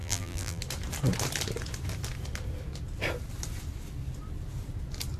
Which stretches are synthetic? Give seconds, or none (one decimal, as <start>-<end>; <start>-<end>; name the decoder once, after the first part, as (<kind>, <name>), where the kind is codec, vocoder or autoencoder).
0.0-0.6 (vocoder, BigVGAN v2)